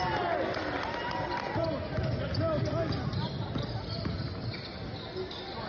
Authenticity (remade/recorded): recorded